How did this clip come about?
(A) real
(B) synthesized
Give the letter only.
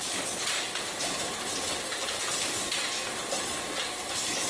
A